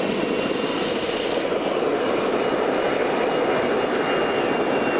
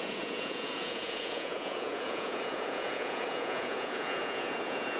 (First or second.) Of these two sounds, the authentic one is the first